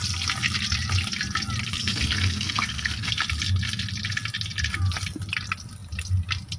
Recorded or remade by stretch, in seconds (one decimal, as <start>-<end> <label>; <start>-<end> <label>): 0.0-1.7 recorded; 1.7-3.1 remade; 3.1-6.6 recorded